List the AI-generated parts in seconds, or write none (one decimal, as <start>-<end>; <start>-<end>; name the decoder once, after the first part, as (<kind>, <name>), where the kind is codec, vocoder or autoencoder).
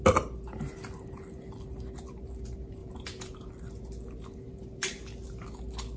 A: 2.8-3.5 (vocoder, Vocos)